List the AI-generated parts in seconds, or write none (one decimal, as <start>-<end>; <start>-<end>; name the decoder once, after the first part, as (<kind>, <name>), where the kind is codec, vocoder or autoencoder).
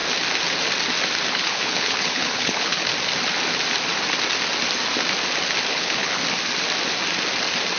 1.3-2.9 (codec, HILCodec); 5.7-6.2